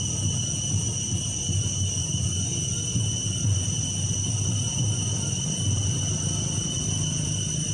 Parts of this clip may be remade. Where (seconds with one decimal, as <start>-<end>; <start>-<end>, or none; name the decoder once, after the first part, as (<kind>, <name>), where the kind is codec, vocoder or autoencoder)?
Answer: 2.0-2.8 (vocoder, Vocos)